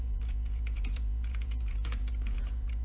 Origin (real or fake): fake